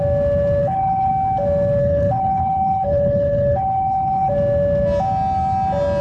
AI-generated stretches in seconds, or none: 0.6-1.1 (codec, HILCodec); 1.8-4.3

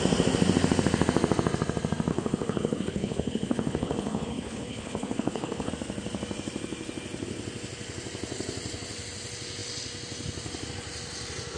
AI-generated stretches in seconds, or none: 2.1-5.7 (codec, HILCodec)

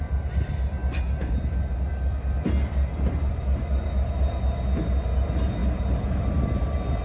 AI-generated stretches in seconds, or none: none

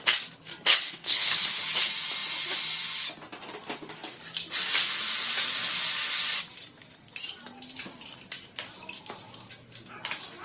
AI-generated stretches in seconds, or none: 0.7-1.6 (codec, HILCodec)

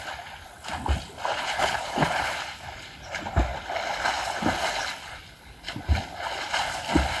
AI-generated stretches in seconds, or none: 1.3-2.3 (codec, HILCodec)

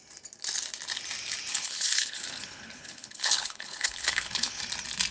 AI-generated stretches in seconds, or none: 1.5-4.6 (codec, HILCodec)

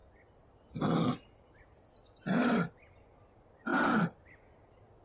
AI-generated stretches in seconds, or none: none

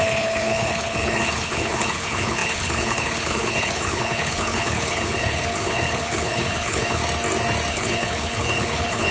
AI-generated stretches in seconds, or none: 0.0-7.0 (codec, HILCodec); 7.7-9.1